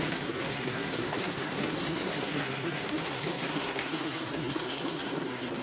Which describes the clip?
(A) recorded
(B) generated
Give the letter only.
B